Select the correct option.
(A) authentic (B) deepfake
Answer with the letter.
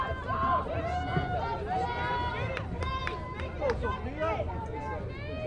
A